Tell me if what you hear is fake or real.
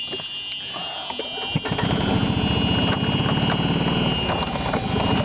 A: real